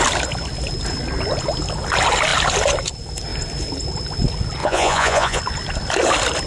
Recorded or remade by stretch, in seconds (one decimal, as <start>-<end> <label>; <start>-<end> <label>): 0.0-4.6 recorded; 4.6-5.4 remade; 5.4-6.5 recorded